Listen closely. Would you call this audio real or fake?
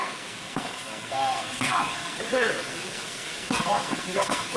fake